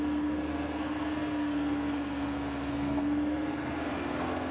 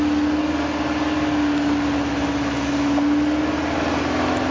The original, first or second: second